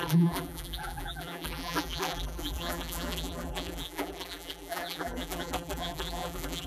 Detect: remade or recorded remade